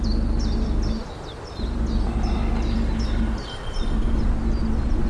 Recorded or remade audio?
recorded